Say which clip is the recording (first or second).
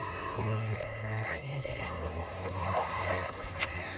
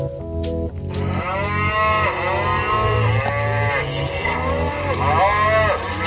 second